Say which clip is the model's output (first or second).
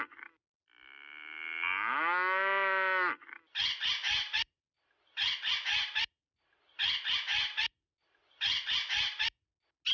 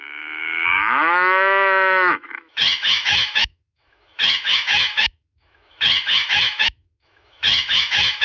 second